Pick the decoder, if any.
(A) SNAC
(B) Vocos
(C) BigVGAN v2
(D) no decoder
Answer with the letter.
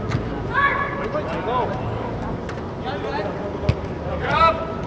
D